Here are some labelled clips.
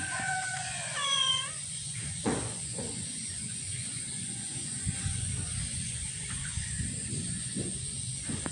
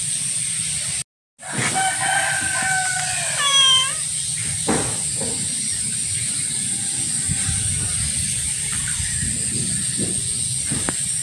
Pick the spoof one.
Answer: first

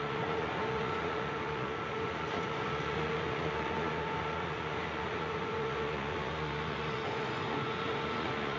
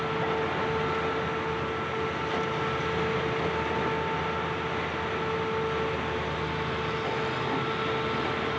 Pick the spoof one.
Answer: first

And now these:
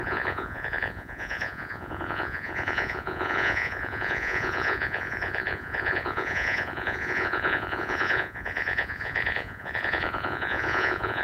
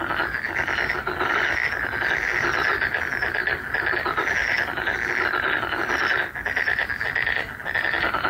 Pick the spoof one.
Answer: first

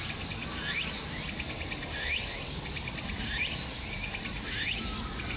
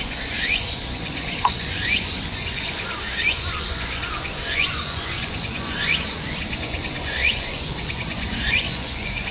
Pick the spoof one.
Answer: second